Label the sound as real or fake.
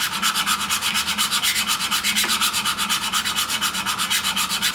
real